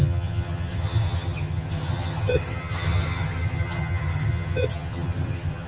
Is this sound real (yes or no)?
no